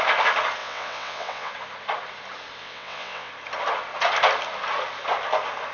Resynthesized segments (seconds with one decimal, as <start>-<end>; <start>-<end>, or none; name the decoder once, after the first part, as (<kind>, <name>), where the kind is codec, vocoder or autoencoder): 0.6-1.5 (vocoder, WaveNeXt); 2.6-3.3